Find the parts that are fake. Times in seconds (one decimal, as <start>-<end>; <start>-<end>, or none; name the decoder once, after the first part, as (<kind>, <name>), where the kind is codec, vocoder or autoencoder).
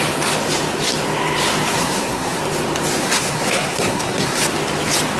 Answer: 1.8-2.4 (codec, SNAC); 3.0-4.4